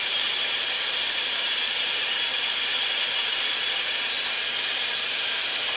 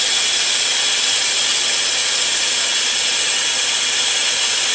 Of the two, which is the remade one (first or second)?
first